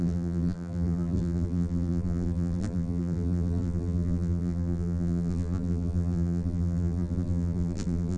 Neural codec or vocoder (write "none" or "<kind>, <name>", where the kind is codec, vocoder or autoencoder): vocoder, BigVGAN v2